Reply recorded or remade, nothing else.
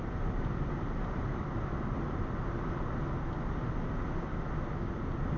recorded